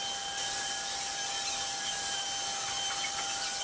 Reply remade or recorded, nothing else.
recorded